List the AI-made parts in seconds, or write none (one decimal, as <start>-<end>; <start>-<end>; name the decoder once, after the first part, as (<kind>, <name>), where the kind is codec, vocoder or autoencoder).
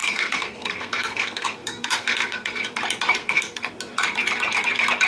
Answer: 0.0-2.6 (codec, SNAC); 3.2-3.7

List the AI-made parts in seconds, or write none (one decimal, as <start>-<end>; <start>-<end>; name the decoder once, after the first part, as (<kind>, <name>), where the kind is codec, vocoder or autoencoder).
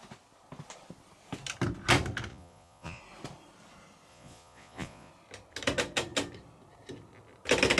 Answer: 2.3-3.0 (vocoder, Vocos); 4.1-5.1